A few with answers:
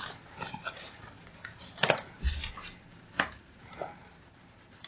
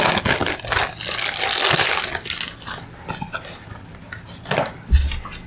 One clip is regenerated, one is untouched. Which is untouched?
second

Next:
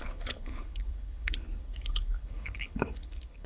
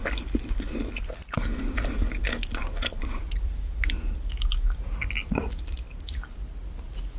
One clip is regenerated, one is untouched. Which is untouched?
second